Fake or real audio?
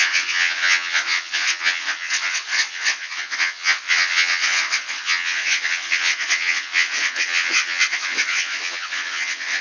fake